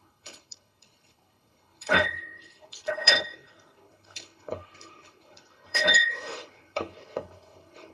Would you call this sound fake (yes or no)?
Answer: yes